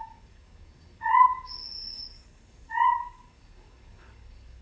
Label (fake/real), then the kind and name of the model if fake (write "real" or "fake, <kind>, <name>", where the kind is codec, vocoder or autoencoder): fake, codec, DAC